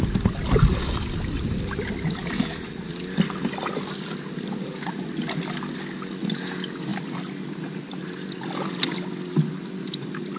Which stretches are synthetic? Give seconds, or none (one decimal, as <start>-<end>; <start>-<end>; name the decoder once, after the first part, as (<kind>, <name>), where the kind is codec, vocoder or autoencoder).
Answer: 6.9-9.1 (vocoder, BigVGAN v2)